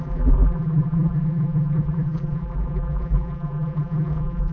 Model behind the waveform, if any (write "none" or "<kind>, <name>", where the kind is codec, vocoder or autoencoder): vocoder, BigVGAN v2